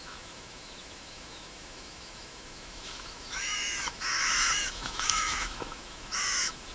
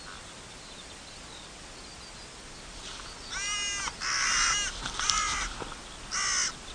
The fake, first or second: first